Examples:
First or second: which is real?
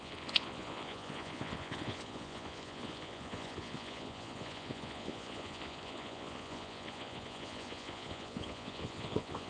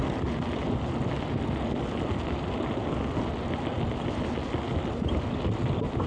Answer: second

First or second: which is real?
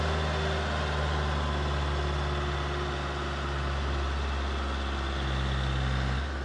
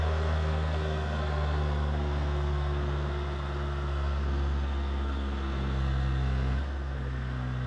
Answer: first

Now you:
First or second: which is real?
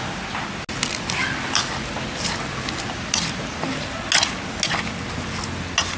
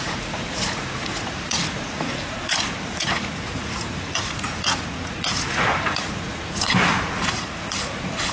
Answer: first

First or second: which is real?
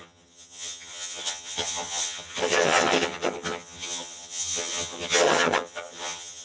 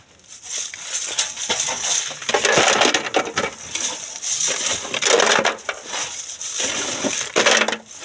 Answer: second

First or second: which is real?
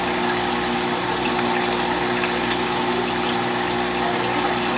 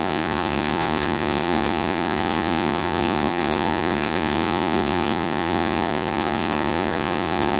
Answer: first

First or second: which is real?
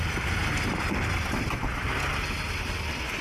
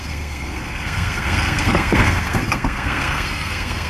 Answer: first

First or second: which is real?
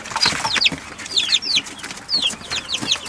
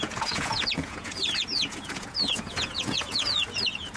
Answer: first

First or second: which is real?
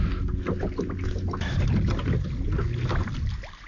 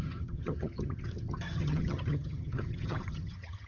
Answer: first